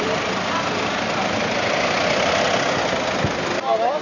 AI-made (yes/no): no